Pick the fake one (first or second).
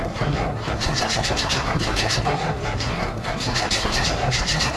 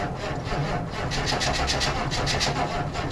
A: first